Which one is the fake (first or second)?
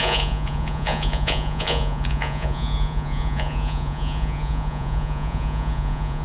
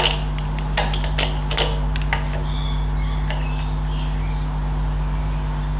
first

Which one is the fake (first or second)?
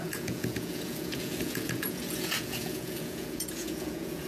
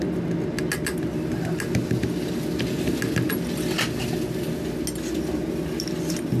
first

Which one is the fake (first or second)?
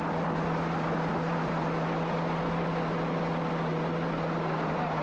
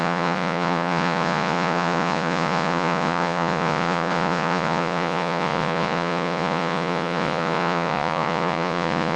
second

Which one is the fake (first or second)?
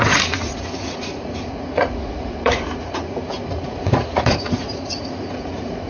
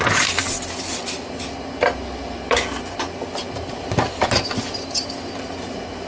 first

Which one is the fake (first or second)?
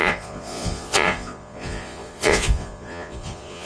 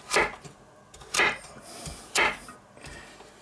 first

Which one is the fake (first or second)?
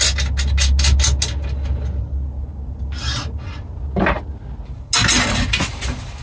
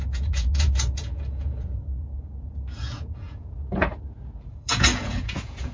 second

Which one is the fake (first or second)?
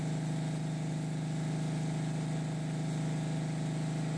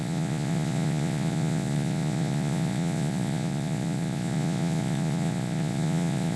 second